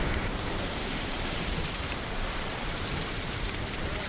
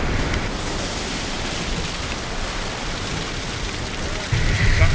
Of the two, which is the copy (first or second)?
first